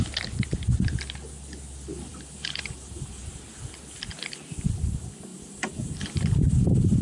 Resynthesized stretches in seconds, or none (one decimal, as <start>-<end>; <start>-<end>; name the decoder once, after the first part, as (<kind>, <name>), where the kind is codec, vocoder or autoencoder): 2.1-3.3 (vocoder, BigVGAN v2); 5.3-7.0